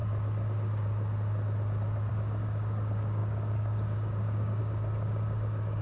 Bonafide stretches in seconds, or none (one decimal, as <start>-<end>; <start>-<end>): 0.0-2.1

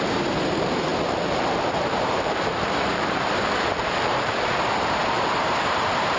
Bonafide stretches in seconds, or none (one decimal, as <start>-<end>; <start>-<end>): 0.9-1.9

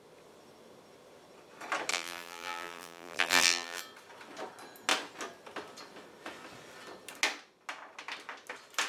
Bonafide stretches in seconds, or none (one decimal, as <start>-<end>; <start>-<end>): 0.0-1.9; 3.8-8.9

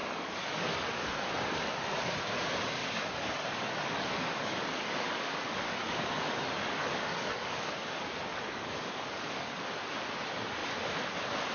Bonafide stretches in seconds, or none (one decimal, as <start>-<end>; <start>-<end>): 1.3-2.8; 7.7-8.3; 9.5-11.5

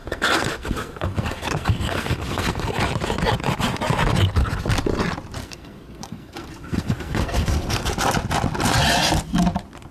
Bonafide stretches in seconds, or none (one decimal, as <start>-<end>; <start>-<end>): 2.8-5.4; 7.9-9.9

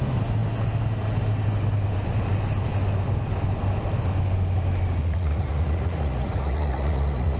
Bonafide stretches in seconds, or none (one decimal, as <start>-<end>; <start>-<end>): 0.0-5.0